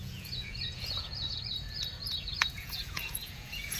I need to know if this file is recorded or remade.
remade